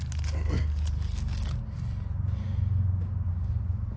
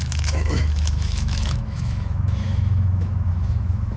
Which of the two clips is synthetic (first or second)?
second